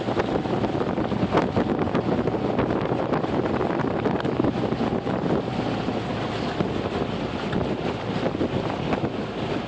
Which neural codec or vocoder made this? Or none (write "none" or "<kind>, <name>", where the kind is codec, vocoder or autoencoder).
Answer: none